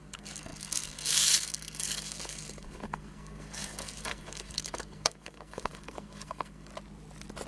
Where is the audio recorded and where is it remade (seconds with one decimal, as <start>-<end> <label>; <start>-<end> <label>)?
0.0-6.7 remade; 6.7-7.5 recorded